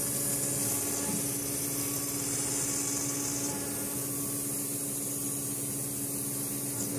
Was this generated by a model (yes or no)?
no